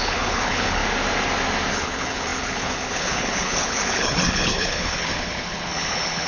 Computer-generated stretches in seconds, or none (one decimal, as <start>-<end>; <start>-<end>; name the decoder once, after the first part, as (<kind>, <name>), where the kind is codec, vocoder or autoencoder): 0.0-0.8 (codec, HILCodec); 1.7-6.3